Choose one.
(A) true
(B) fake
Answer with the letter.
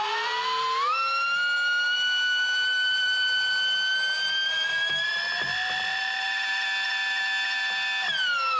A